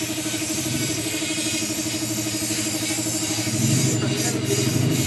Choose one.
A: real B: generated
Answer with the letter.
A